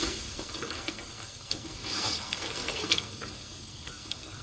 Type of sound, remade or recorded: remade